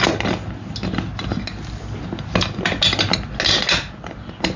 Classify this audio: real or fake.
real